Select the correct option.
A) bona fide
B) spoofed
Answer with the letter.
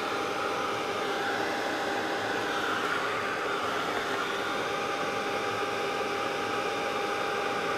A